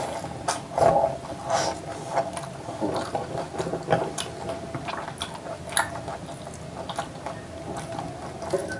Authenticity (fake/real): real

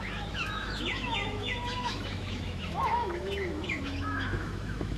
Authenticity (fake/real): fake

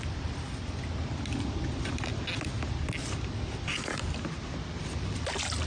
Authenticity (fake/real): real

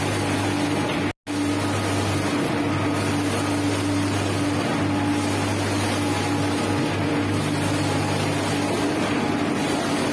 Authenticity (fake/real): real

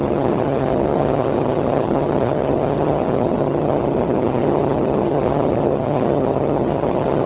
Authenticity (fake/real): fake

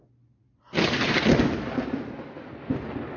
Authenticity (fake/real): real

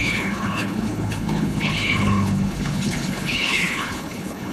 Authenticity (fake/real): fake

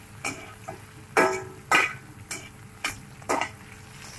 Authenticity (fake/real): real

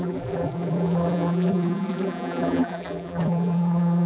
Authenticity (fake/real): fake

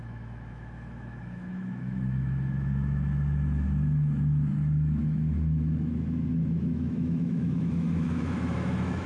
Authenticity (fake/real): fake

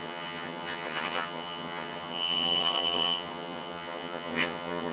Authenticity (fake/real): fake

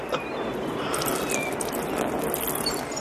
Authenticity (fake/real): real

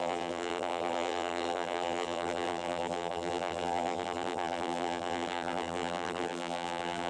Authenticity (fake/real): fake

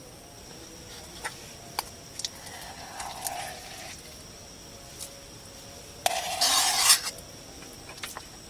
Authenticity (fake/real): real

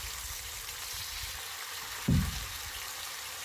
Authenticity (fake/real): fake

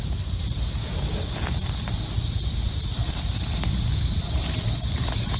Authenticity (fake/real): real